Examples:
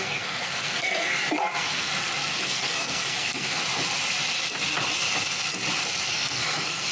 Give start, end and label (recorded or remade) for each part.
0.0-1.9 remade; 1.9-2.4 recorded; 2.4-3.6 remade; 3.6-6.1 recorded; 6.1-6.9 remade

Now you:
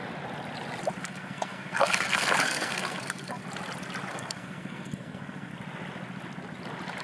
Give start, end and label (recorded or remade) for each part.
0.0-1.0 recorded; 1.0-3.4 remade; 3.4-4.1 recorded; 4.1-5.5 remade; 5.5-7.0 recorded

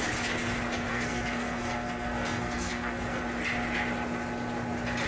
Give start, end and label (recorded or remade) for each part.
0.0-0.9 recorded; 0.9-3.2 remade; 3.2-5.1 recorded

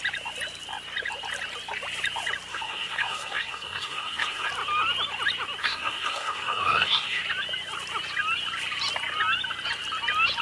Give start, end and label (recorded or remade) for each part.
0.0-2.5 recorded; 2.5-4.5 remade; 4.5-5.6 recorded; 5.6-7.2 remade; 7.2-10.4 recorded

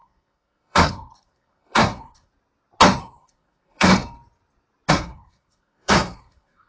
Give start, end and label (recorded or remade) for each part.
0.0-2.3 remade; 2.3-3.0 recorded; 3.0-3.9 remade; 3.9-4.9 recorded; 4.9-6.7 remade

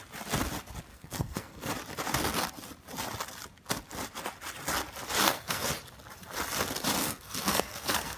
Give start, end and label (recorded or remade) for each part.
0.0-0.9 recorded; 0.9-1.7 remade; 1.7-5.2 recorded; 5.2-5.7 remade; 5.7-7.0 recorded; 7.0-8.2 remade

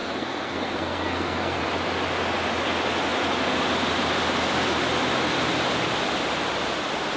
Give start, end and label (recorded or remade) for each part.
0.0-1.6 remade; 1.6-7.2 recorded